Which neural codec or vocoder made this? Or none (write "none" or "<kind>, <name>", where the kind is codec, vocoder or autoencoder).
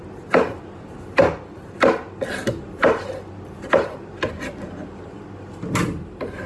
none